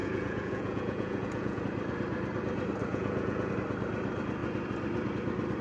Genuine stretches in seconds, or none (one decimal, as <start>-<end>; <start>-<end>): 1.6-2.9; 3.5-5.6